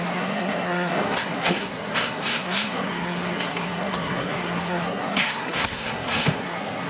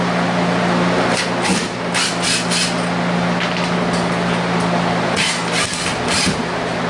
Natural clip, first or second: second